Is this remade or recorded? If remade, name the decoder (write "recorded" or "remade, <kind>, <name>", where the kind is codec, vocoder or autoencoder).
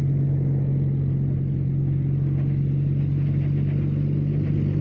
recorded